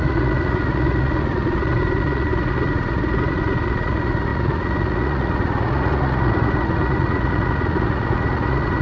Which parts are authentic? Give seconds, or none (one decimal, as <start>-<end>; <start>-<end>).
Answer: none